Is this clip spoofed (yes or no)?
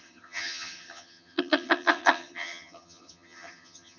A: yes